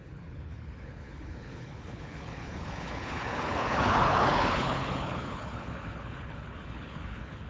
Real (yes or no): no